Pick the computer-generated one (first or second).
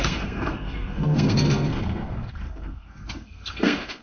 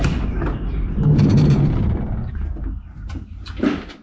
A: first